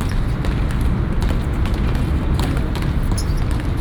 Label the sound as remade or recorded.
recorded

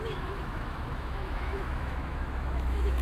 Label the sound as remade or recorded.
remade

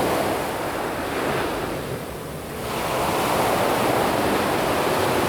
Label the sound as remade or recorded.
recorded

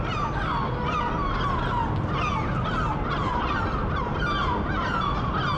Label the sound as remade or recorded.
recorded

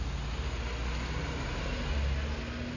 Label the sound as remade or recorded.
recorded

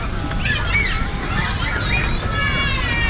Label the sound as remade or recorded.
recorded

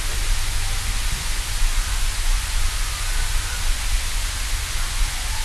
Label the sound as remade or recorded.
remade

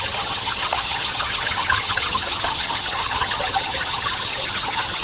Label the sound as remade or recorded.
remade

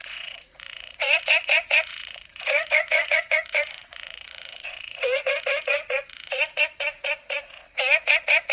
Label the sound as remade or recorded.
remade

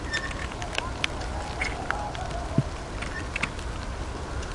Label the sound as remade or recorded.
recorded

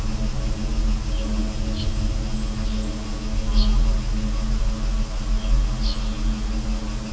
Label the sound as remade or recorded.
recorded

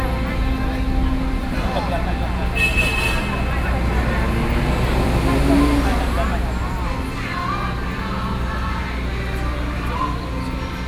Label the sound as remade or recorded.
recorded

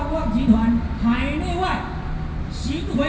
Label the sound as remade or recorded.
recorded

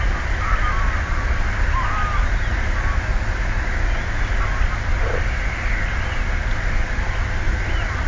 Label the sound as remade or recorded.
recorded